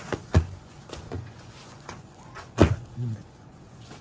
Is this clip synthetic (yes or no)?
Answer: yes